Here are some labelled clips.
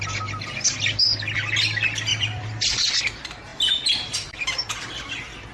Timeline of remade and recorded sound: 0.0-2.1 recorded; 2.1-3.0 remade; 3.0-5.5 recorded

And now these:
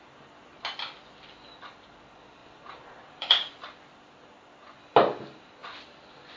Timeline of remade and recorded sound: 0.0-2.4 recorded; 2.4-3.6 remade; 3.6-6.4 recorded